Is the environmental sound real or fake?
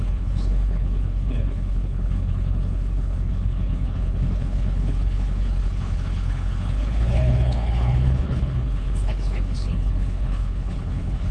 fake